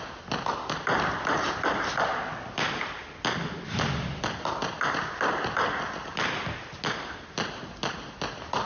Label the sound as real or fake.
real